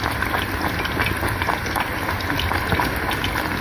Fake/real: real